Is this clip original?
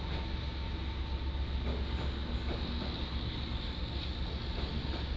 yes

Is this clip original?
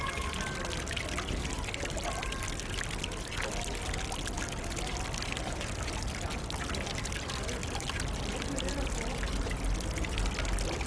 yes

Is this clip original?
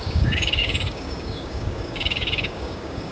no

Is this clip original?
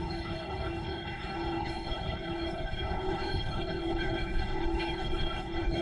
no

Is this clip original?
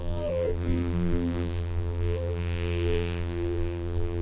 no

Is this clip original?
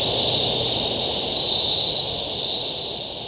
yes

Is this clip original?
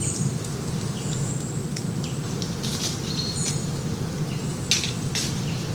yes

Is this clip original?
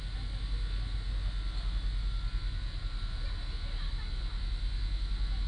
yes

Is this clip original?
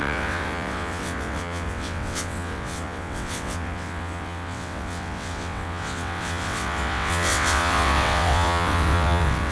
no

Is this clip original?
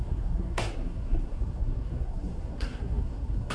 no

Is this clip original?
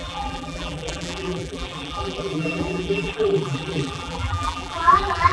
no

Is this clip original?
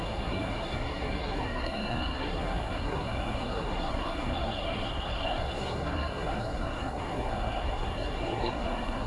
no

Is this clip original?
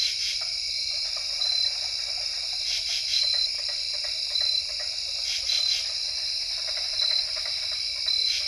yes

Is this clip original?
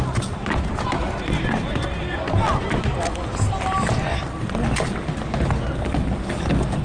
yes